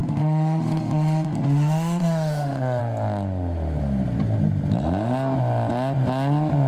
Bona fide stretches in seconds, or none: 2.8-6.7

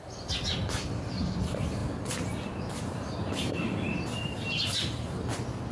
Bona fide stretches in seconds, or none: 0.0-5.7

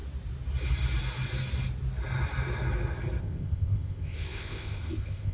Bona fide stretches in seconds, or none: 0.0-3.2